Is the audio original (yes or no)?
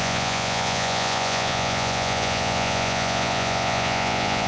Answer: no